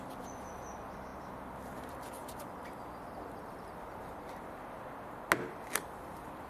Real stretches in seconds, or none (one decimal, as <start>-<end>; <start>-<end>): 0.0-6.5